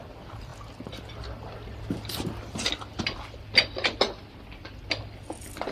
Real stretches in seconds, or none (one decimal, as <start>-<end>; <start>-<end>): 0.0-5.7